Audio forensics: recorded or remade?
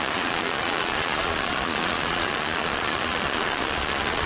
remade